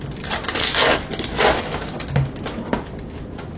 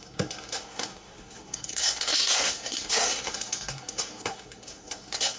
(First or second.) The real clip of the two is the first